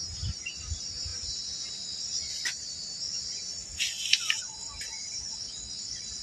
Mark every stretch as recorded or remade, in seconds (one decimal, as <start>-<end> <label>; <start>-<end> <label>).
0.0-6.2 recorded